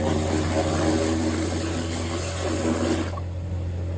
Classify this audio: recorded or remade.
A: recorded